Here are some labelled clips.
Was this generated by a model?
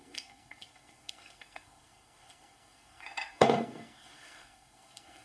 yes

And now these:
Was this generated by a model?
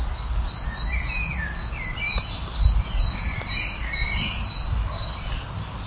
no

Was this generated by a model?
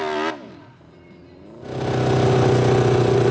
no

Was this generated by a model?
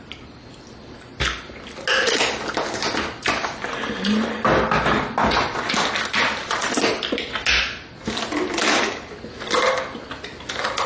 no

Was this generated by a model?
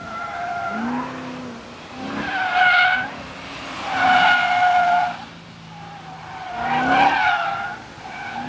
no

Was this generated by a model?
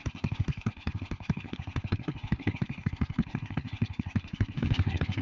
yes